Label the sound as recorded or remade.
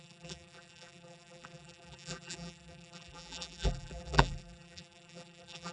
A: remade